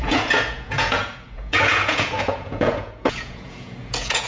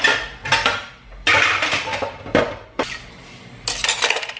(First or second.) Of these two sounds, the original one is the second